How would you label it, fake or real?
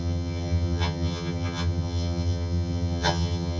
fake